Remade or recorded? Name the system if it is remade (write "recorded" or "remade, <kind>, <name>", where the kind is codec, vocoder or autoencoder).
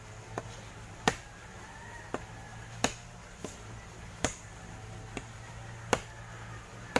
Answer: recorded